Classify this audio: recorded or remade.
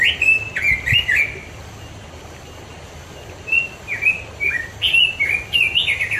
recorded